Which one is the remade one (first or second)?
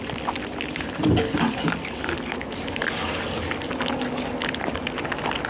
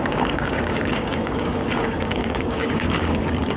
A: second